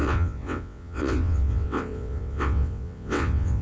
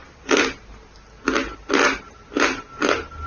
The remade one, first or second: first